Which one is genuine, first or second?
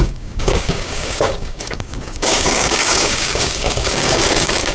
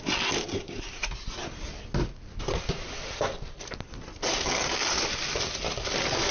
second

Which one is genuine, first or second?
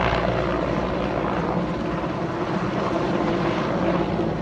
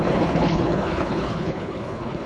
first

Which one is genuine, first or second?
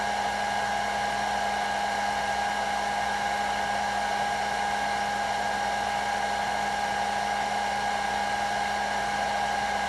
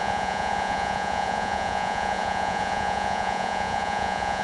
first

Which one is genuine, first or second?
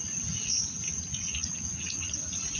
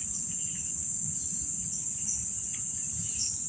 second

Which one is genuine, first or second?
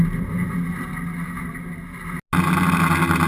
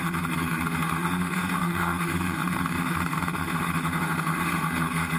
first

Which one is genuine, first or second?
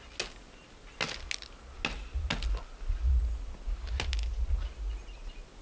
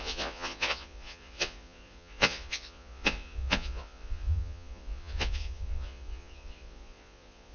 first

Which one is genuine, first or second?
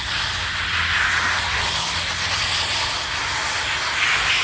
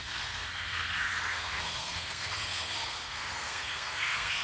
first